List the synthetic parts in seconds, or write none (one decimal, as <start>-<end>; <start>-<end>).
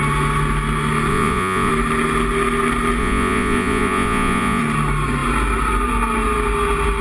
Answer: 1.1-1.7; 3.0-4.6